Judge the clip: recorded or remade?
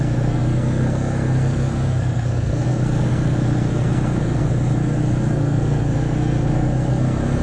remade